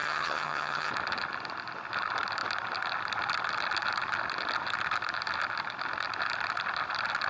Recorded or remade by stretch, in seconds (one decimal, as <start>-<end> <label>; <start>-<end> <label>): 0.0-0.9 remade; 0.9-7.3 recorded